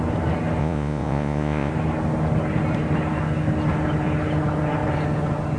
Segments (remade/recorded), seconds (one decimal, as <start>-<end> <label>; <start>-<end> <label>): 0.0-0.6 recorded; 0.6-1.7 remade; 1.7-5.6 recorded